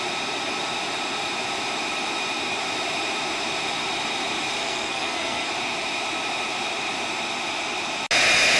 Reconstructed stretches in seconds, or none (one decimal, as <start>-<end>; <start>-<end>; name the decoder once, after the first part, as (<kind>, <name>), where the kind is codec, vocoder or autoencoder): 4.6-5.5 (codec, SNAC)